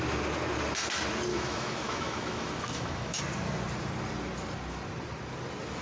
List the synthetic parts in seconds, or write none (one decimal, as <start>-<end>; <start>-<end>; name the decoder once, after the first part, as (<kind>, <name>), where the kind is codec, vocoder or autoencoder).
1.3-3.2 (autoencoder, DAC-VAE)